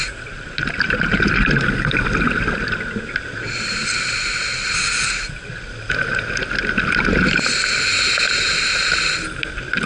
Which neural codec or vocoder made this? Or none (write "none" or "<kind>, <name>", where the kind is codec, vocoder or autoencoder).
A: none